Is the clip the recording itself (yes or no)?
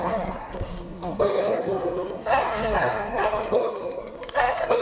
no